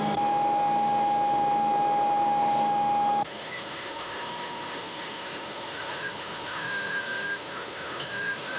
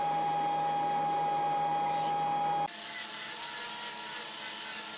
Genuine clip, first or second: second